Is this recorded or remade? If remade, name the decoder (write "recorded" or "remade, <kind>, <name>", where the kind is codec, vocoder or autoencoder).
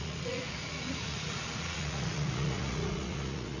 remade, vocoder, Vocos